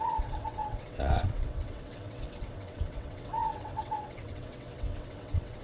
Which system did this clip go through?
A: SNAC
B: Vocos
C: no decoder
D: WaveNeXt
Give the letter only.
D